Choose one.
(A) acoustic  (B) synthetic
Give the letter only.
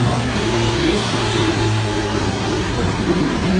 B